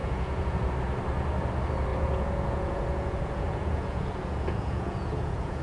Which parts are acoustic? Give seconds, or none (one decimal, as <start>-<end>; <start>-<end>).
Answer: 0.7-1.9